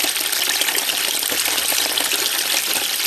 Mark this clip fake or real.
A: real